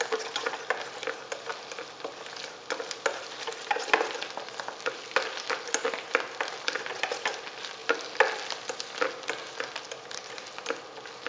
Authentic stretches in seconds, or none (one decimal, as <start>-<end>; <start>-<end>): 0.0-11.3